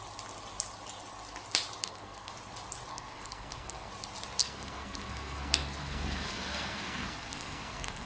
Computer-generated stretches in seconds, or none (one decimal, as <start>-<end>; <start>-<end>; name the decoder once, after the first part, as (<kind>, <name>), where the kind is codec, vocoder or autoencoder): 1.8-2.3 (codec, SNAC); 2.9-3.9; 4.4-8.1